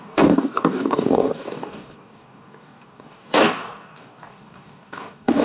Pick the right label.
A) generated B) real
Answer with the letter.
A